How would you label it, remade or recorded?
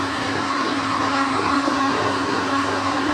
remade